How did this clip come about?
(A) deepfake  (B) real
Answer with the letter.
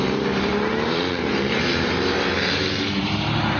A